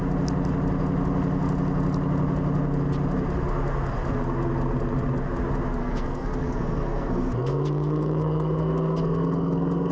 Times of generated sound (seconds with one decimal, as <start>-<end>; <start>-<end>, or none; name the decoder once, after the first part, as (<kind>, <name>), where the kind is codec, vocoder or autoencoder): 5.8-9.9 (codec, SNAC)